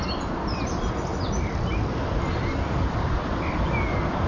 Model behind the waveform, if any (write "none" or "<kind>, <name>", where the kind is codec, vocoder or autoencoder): none